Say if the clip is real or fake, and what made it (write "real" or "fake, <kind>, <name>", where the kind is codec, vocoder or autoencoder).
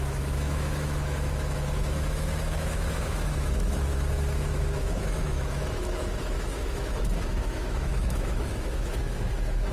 fake, autoencoder, DAC-VAE